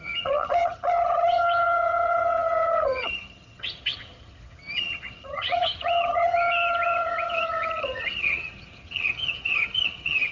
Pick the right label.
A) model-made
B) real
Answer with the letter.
A